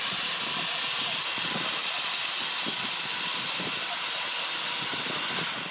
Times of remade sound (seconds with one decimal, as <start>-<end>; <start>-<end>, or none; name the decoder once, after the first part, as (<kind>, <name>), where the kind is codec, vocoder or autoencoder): none